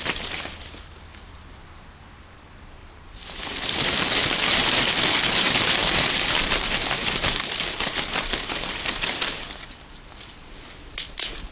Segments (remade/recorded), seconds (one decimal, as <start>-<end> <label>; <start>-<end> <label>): 0.0-2.8 recorded; 2.8-4.6 remade; 4.6-5.1 recorded; 5.1-7.9 remade; 7.9-11.5 recorded